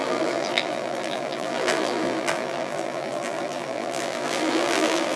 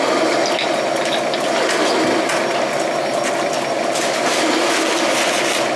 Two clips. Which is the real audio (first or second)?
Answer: second